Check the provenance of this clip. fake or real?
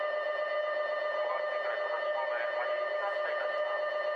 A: real